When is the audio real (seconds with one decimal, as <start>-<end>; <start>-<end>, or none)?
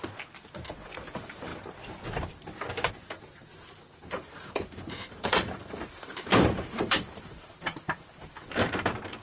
0.0-3.5; 8.7-9.2